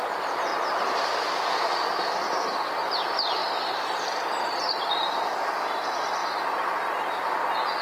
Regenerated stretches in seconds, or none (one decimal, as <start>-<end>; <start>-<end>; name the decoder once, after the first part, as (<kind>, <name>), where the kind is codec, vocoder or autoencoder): none